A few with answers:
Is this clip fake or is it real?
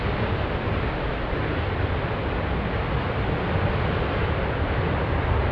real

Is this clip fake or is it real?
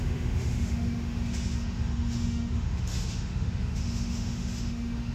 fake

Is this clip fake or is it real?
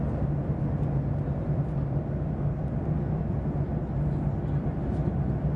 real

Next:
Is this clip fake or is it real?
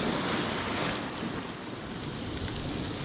real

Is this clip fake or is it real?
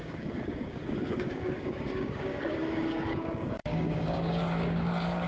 fake